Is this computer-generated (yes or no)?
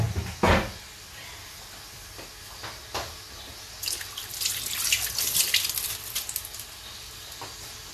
no